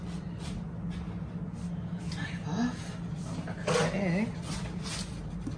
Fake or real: real